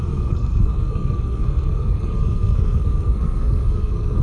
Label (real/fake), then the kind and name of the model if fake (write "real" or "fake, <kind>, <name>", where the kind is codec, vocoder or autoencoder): fake, codec, SNAC